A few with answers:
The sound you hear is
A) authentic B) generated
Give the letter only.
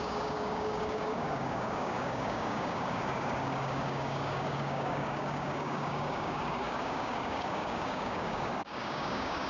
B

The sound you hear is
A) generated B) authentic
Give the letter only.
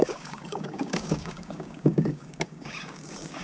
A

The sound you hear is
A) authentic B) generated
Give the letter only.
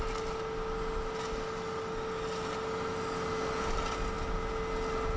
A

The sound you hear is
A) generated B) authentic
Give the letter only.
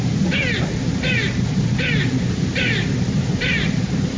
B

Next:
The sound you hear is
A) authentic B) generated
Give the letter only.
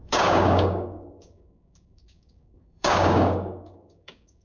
B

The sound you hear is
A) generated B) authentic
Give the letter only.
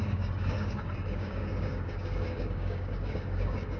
A